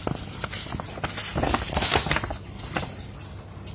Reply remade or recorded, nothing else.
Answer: recorded